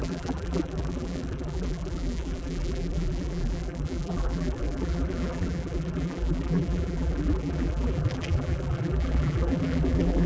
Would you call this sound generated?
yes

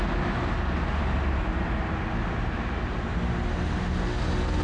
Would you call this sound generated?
no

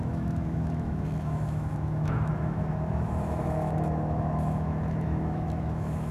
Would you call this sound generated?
yes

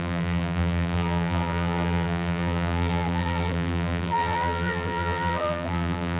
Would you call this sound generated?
yes